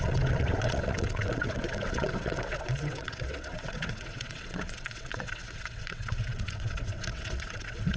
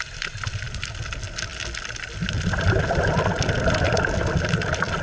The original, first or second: second